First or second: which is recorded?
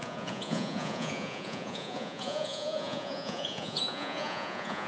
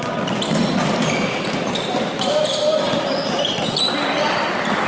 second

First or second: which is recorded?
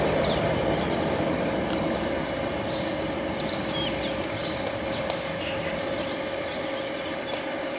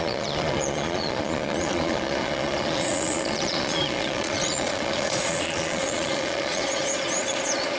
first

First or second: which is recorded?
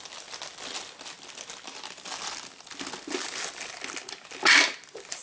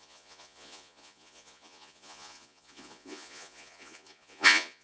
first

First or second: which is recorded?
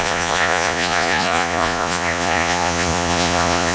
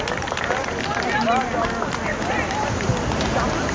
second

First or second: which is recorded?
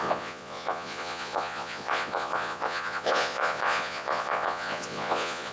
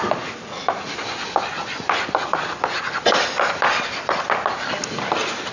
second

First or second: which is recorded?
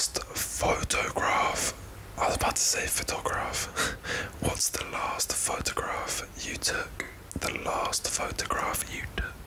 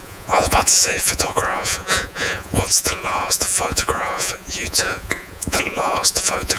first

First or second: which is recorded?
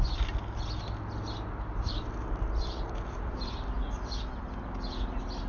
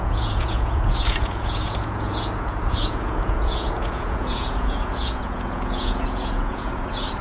first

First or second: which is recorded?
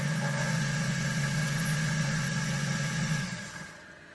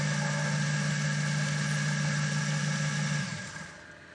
second